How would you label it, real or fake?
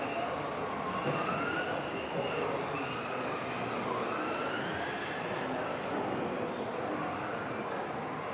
real